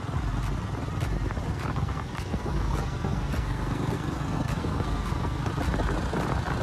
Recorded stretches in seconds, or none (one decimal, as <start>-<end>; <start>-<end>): 0.0-1.5; 5.5-6.6